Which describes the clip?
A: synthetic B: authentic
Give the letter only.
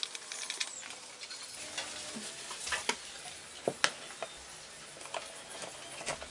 B